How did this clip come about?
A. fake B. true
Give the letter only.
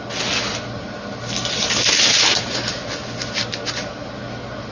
B